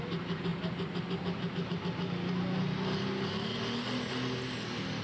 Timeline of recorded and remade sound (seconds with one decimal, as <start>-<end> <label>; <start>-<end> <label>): 0.0-5.0 recorded